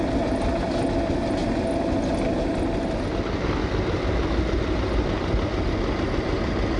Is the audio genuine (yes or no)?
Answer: yes